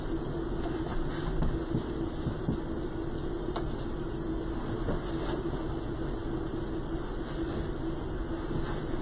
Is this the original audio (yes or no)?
yes